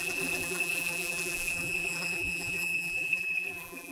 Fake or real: fake